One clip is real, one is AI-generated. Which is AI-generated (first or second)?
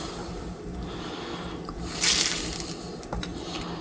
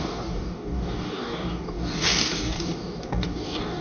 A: second